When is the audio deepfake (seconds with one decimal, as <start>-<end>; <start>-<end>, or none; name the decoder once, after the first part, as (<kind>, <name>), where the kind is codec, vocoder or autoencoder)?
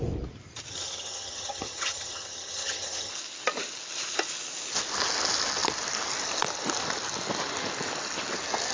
0.7-3.1 (vocoder, HiFi-GAN)